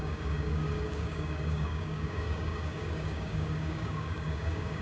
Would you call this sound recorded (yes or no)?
no